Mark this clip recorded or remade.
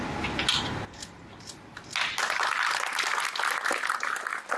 recorded